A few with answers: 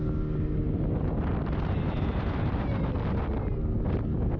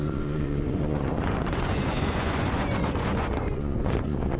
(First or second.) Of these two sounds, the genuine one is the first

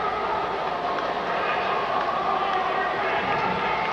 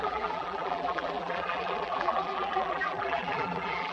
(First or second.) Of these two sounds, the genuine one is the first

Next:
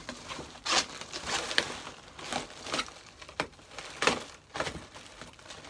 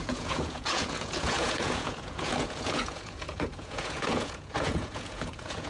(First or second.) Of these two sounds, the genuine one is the first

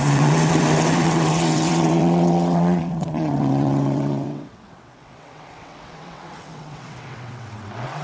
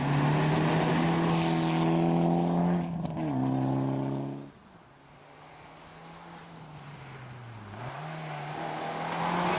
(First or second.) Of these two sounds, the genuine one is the second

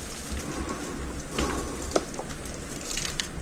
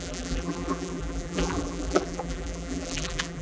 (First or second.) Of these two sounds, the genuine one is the first